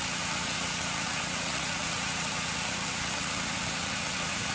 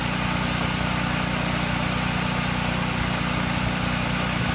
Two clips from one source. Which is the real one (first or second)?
second